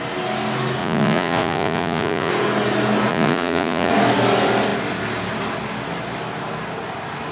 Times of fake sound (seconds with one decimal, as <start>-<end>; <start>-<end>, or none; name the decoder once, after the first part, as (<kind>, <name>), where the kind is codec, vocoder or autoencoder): 0.8-2.3 (vocoder, Vocos); 3.1-3.9